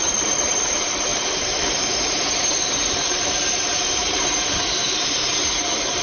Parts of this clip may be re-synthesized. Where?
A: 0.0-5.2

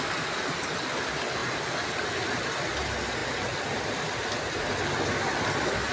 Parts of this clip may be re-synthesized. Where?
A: 3.2-4.8